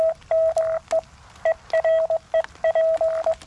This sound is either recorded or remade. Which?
recorded